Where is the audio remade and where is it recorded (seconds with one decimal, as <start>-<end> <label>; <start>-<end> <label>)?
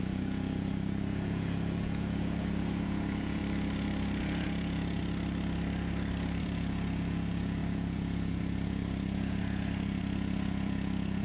0.0-3.4 remade; 3.4-4.2 recorded; 4.2-5.0 remade; 5.0-6.4 recorded; 6.4-11.2 remade